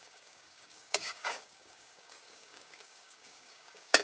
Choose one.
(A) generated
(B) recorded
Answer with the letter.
A